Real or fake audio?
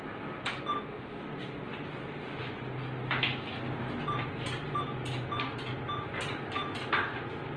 real